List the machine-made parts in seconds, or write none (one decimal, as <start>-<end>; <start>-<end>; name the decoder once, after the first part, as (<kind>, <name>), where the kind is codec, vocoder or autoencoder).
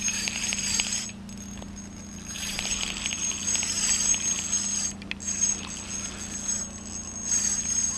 none